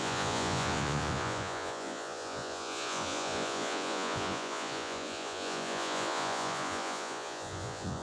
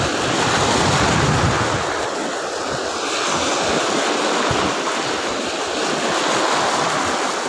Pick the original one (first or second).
second